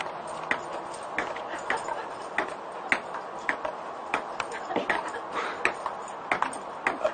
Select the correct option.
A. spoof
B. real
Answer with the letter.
B